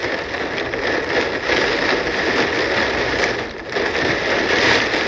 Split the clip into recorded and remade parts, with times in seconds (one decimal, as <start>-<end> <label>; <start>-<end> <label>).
0.0-5.1 recorded